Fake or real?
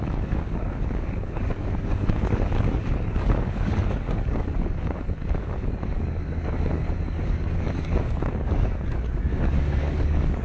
fake